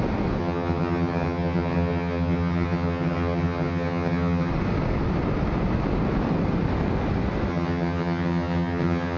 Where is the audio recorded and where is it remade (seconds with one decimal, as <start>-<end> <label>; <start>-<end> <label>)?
0.0-0.4 recorded; 0.4-4.5 remade; 4.5-7.5 recorded; 7.5-9.2 remade